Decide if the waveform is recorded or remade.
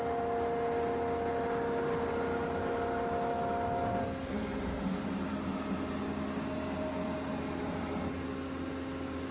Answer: recorded